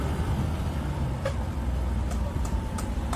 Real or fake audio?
fake